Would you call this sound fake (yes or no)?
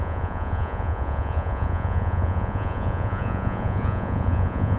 yes